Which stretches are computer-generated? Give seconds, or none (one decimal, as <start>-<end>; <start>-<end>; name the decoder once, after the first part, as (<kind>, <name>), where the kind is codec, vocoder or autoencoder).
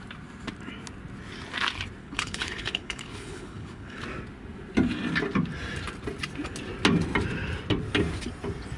2.0-4.0 (codec, HILCodec)